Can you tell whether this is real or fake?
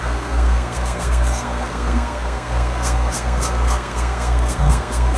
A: fake